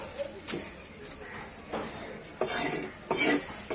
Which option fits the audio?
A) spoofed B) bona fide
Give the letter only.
B